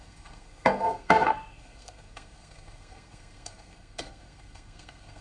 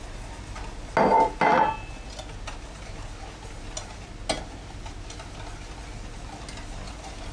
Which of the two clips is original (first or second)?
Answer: second